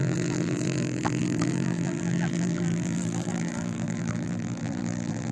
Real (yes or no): no